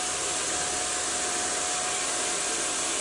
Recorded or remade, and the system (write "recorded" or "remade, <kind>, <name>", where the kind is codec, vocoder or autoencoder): recorded